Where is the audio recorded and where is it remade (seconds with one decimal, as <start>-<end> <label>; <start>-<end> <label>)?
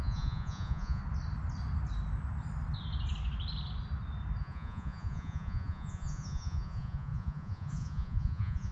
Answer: 0.0-1.0 remade; 1.0-4.4 recorded; 4.4-8.7 remade